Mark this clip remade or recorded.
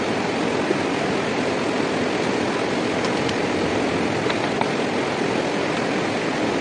recorded